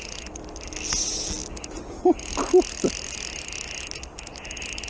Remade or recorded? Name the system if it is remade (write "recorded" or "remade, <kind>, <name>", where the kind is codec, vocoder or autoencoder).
recorded